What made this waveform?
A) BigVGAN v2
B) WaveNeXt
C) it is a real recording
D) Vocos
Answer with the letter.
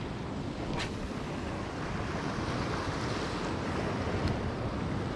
C